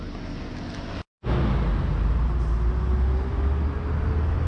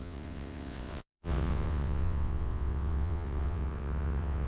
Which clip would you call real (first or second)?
first